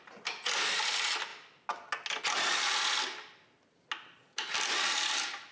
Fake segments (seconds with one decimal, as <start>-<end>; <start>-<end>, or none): none